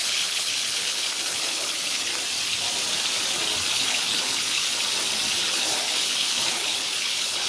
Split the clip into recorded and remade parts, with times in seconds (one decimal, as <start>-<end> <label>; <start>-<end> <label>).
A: 0.0-2.1 remade; 2.1-3.7 recorded; 3.7-4.7 remade; 4.7-5.3 recorded; 5.3-7.5 remade